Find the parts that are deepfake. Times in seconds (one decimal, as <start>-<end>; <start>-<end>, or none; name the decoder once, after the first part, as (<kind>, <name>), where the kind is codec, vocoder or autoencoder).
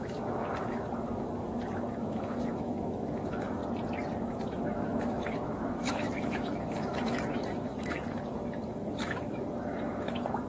0.0-3.6 (autoencoder, DAC-VAE); 4.2-10.5